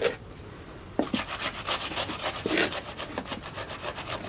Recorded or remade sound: recorded